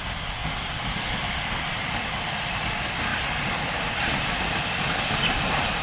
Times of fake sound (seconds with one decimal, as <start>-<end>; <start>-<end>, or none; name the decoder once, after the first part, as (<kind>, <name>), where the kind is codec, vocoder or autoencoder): 0.0-5.8 (vocoder, BigVGAN v2)